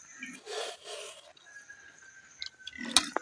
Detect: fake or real real